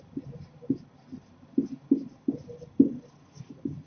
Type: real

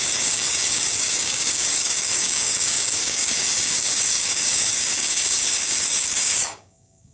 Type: fake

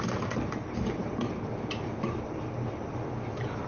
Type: real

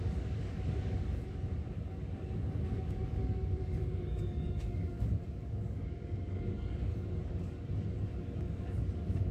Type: fake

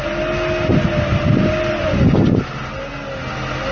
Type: real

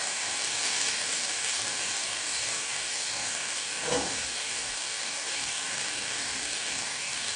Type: fake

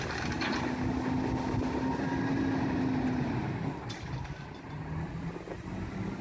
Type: real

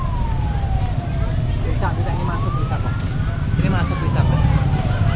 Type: real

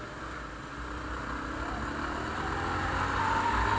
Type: real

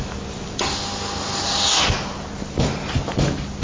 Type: real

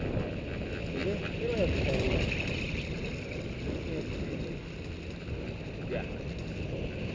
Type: real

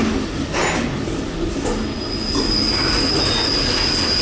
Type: real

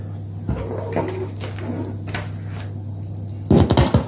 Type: real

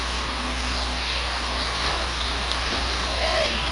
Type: fake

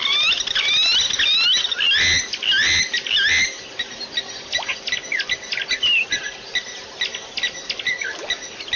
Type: real